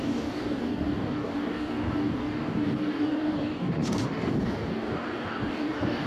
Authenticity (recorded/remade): remade